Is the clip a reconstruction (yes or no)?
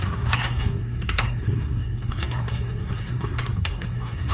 yes